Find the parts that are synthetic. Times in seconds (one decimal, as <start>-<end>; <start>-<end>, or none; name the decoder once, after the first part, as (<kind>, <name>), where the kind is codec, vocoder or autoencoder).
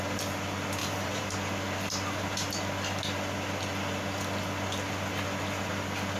0.8-1.3 (vocoder, BigVGAN v2)